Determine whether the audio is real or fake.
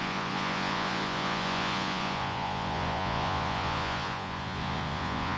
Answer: fake